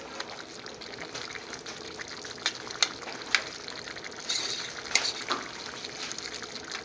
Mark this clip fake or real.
real